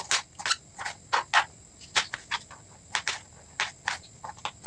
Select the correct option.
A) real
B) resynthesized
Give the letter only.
A